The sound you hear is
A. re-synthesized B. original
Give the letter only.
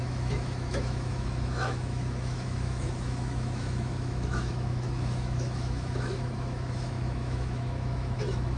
A